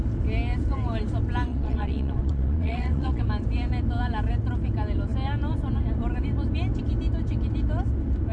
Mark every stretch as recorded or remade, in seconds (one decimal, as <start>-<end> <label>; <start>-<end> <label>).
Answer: 0.0-1.5 recorded; 1.5-3.2 remade; 3.2-8.3 recorded